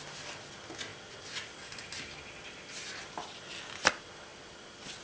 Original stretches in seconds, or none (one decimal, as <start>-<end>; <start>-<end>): 0.0-5.0

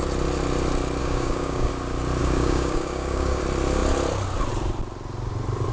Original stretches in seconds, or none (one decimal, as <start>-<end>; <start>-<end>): 0.0-1.0; 1.7-2.2; 3.4-5.7

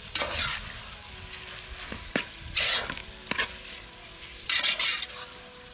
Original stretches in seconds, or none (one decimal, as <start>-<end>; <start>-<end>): 0.0-5.7

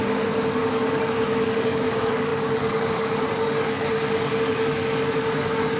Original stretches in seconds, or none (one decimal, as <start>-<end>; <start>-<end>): none

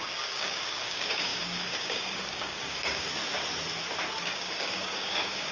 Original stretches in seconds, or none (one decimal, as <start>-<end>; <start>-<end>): 3.1-4.2

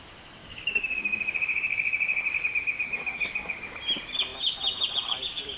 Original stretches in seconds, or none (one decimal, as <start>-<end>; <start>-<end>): 0.0-0.4; 3.8-5.6

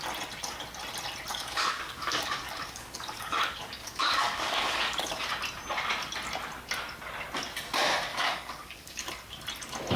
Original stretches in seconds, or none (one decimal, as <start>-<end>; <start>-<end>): 0.0-1.3; 5.3-8.1; 9.1-10.0